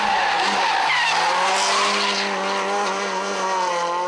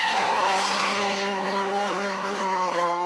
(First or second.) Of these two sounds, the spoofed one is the second